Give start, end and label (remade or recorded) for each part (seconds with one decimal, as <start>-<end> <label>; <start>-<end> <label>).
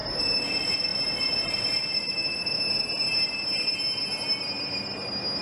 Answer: 0.0-0.5 remade; 0.5-0.9 recorded; 0.9-1.8 remade; 1.8-5.4 recorded